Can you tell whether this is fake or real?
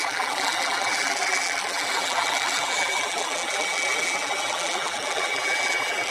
fake